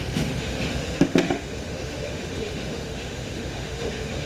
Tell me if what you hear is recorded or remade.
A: remade